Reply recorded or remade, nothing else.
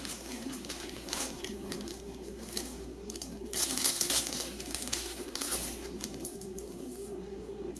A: remade